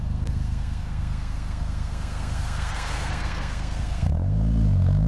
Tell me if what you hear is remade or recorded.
remade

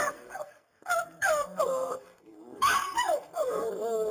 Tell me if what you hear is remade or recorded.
remade